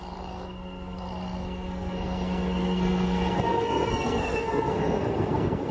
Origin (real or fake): fake